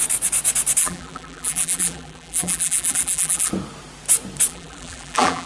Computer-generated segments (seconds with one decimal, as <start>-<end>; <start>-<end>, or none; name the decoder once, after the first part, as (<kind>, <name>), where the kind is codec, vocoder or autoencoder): 0.8-3.5 (vocoder, BigVGAN v2); 4.5-5.5